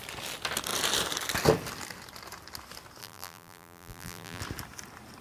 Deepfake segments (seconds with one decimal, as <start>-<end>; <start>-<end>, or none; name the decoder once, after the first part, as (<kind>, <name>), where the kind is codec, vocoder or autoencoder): 3.0-4.4 (vocoder, BigVGAN v2)